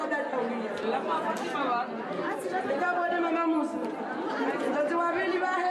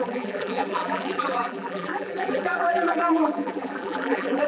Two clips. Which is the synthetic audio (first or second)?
second